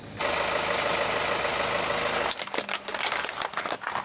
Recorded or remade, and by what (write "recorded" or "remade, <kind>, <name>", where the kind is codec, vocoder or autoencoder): recorded